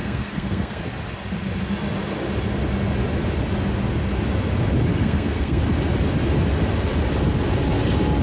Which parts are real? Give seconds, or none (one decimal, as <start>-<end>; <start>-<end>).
0.8-4.9; 5.6-8.2